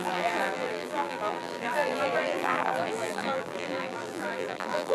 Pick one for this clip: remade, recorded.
remade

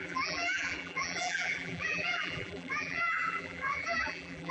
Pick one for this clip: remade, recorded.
remade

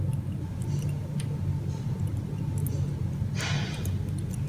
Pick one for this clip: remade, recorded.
recorded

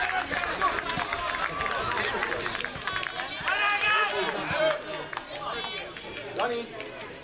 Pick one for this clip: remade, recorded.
recorded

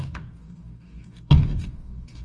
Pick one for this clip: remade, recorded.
remade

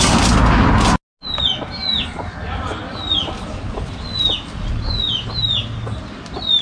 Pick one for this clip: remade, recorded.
recorded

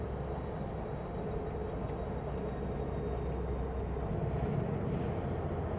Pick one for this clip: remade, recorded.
recorded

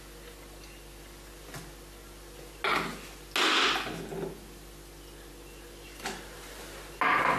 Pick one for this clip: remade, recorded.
recorded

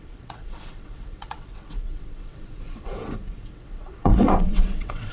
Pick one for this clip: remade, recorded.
remade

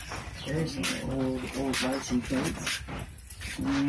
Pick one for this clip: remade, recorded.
recorded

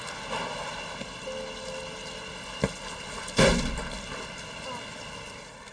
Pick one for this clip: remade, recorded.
recorded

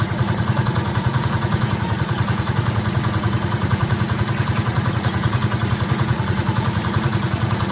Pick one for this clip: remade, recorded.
remade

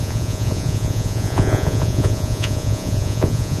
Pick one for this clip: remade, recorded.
remade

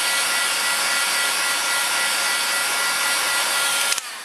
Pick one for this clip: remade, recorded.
recorded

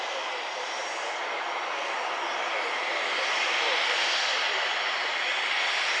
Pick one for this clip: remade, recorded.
remade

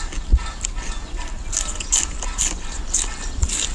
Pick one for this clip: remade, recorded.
recorded